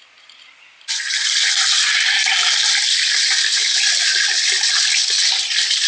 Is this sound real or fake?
real